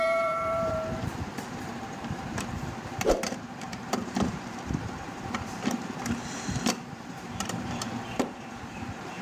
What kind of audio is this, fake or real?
fake